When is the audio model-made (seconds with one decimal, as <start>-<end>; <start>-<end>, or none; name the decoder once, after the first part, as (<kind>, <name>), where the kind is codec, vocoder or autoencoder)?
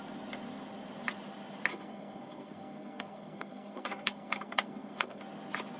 1.7-5.2 (codec, SNAC)